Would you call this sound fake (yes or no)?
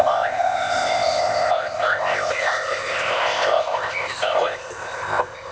yes